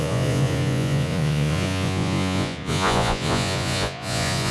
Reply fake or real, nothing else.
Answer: fake